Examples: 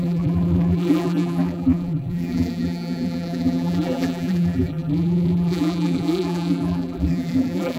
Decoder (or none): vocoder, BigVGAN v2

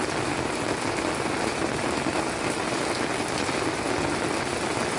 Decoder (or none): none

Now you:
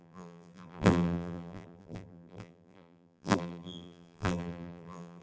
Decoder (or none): vocoder, BigVGAN v2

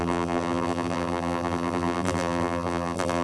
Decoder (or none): vocoder, BigVGAN v2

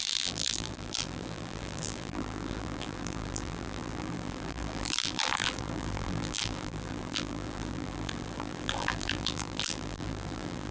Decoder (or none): vocoder, BigVGAN v2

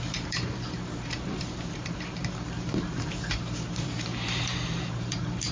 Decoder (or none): vocoder, BigVGAN v2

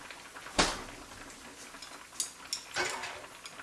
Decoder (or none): none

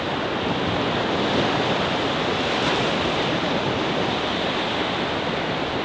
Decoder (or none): vocoder, BigVGAN v2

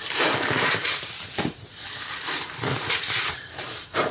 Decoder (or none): vocoder, BigVGAN v2